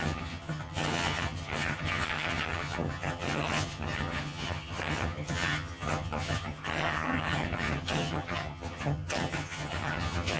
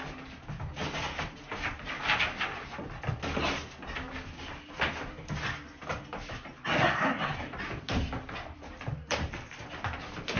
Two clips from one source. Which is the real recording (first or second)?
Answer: second